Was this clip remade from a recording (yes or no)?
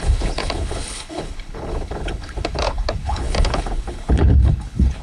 yes